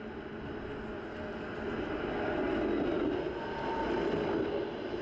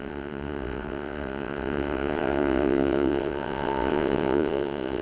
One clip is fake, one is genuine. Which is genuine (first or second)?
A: first